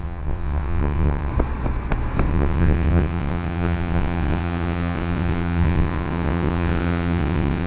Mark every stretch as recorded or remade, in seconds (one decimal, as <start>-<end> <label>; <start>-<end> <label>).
0.0-1.3 remade; 1.3-2.3 recorded; 2.3-7.7 remade